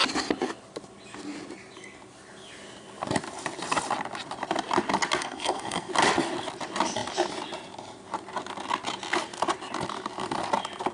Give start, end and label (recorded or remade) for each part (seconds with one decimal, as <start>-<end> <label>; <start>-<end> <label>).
0.0-5.2 recorded; 5.2-5.9 remade; 5.9-10.9 recorded